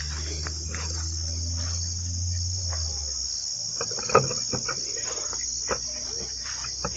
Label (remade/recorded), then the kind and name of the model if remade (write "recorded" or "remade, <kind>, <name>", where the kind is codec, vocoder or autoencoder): recorded